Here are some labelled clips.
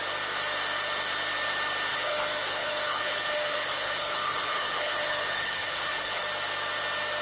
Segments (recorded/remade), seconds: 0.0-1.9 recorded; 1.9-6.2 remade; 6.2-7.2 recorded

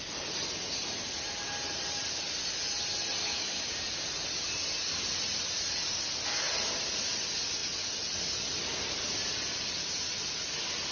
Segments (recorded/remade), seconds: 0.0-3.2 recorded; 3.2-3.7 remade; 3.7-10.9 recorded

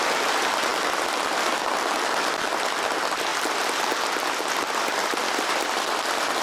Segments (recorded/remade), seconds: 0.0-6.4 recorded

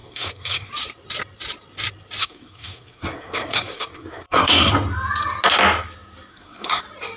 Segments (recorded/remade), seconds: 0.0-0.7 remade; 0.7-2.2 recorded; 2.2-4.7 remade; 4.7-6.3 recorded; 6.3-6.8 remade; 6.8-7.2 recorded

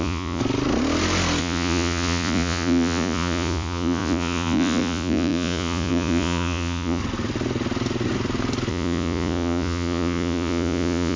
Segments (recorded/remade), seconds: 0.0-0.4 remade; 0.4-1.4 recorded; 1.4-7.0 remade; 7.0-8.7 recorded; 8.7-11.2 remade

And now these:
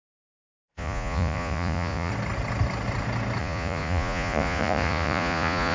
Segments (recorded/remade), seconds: 0.0-2.1 remade; 2.1-3.4 recorded; 3.4-5.7 remade